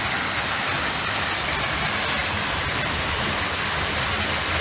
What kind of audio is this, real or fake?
real